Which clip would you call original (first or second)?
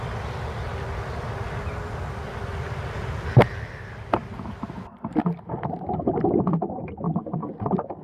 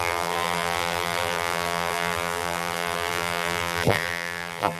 first